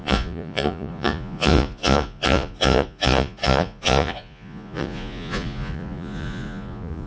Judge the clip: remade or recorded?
remade